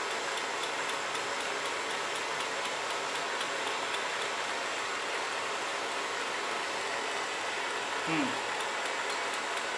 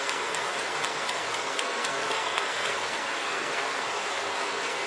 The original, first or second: first